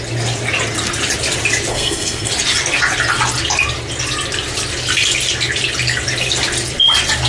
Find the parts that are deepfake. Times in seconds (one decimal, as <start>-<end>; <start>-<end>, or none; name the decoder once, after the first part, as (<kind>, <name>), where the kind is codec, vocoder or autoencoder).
1.7-2.3 (codec, SNAC)